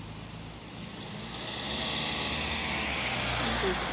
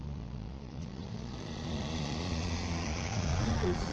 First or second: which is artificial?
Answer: second